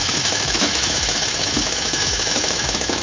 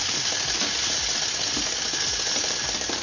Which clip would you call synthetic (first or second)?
first